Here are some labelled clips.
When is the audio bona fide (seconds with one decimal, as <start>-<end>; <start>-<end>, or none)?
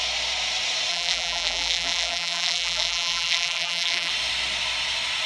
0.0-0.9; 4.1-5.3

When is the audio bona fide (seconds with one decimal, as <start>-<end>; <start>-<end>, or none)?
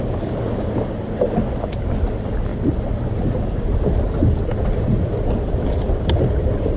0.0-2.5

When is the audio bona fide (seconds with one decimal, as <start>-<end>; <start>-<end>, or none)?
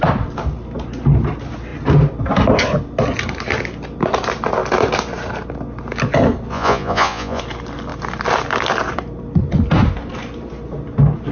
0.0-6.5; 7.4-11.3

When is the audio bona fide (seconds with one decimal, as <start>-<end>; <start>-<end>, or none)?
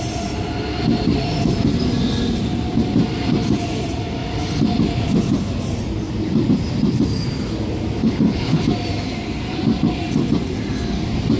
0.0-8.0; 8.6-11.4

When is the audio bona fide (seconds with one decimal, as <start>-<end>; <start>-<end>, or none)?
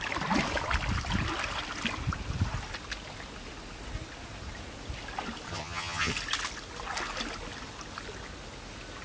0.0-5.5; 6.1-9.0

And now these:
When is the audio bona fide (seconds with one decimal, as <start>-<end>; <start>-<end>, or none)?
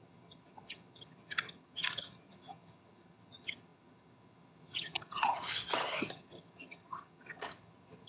none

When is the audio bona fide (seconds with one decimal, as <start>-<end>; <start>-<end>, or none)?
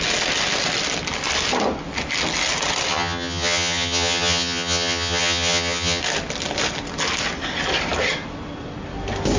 0.0-2.9; 6.0-9.4